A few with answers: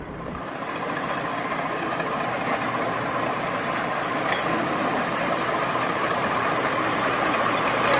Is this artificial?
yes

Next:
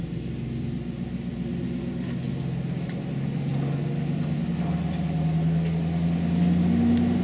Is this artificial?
no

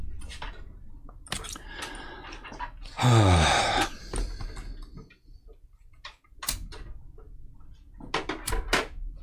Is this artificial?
no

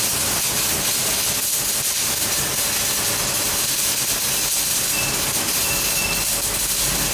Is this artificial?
no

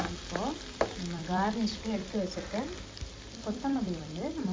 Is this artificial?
yes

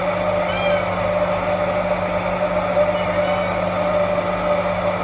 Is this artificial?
no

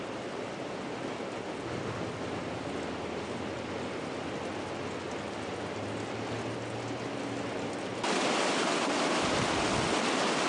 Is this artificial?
no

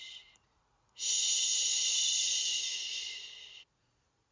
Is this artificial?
yes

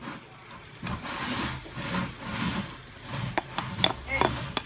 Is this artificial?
no